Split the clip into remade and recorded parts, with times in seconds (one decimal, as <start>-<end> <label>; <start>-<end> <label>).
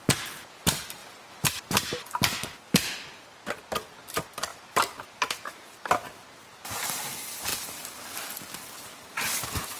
0.0-1.0 recorded; 1.0-1.7 remade; 1.7-4.5 recorded; 4.5-6.1 remade; 6.1-9.8 recorded